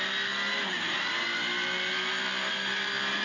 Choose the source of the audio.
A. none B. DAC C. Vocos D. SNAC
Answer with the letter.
A